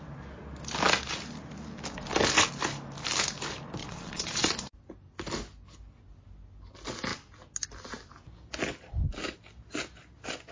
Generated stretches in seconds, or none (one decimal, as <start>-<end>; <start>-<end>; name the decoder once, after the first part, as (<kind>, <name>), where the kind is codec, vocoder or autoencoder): 3.8-4.5 (vocoder, Vocos)